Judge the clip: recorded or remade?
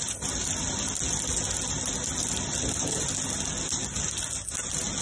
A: recorded